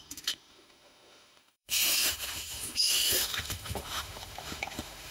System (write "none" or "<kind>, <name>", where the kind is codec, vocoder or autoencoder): autoencoder, DAC-VAE